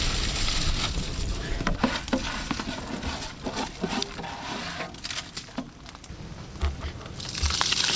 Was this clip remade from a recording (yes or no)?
no